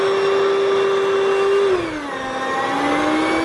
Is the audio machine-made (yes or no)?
no